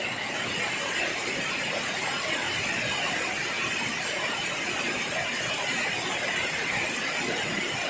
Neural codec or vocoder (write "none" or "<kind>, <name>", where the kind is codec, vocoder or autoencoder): none